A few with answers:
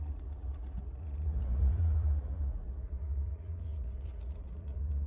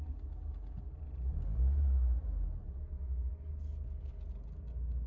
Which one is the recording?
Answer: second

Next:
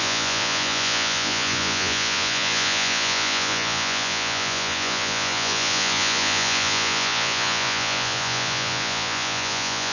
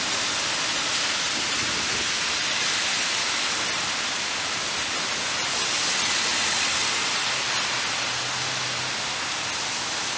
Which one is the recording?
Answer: second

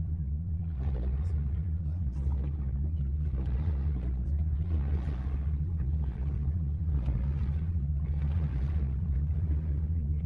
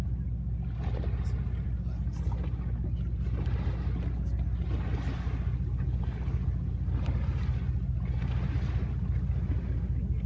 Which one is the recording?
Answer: second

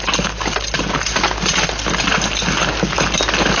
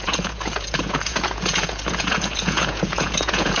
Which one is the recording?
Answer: first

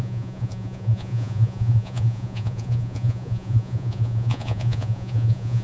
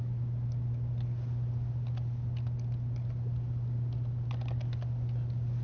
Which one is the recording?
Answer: second